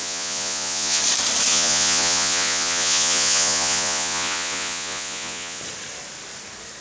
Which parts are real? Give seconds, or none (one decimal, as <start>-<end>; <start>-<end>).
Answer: 1.0-1.5; 5.6-6.8